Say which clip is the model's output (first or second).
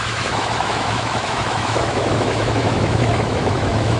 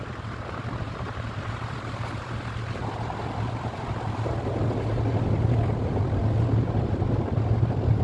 first